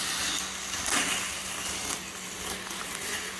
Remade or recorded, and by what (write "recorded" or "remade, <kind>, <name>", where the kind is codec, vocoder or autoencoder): recorded